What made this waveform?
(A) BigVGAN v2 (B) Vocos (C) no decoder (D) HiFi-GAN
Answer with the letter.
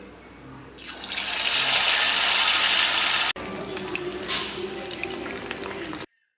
C